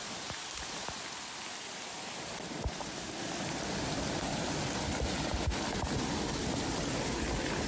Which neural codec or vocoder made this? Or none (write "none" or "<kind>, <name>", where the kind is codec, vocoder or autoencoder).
vocoder, BigVGAN v2